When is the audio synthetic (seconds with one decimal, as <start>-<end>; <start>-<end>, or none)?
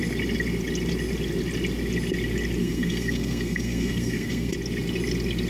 2.6-4.5